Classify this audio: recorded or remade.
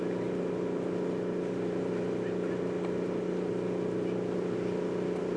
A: recorded